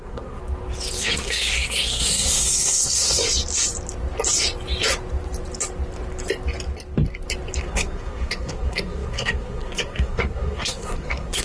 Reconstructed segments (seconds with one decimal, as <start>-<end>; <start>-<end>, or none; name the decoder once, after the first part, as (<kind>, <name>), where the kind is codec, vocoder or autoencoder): 0.0-0.4 (codec, SNAC); 1.0-3.2; 7.6-11.4